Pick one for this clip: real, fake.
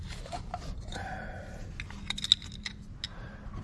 real